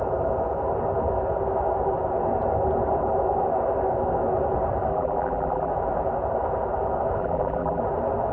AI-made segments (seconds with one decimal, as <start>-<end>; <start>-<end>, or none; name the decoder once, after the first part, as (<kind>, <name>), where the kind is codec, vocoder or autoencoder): 4.9-5.7 (vocoder, BigVGAN v2); 7.2-7.8